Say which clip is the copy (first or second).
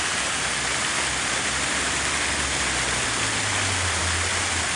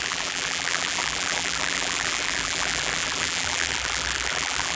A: second